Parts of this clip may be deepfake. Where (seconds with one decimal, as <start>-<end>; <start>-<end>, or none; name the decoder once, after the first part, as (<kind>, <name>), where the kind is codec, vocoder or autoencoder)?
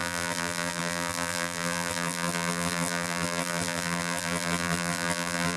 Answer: 0.0-5.6 (vocoder, BigVGAN v2)